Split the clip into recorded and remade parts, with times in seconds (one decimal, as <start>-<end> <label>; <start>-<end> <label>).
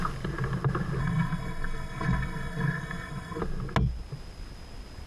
0.0-1.0 recorded; 1.0-3.4 remade; 3.4-5.1 recorded